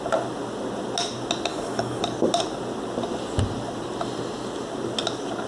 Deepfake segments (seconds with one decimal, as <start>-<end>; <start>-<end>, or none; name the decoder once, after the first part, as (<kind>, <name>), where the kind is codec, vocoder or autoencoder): 1.5-2.0 (codec, DAC)